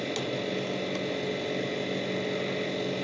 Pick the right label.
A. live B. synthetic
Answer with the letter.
A